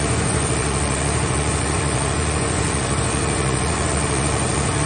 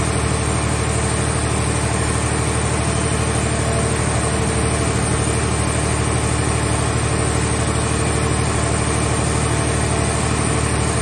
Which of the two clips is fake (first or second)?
first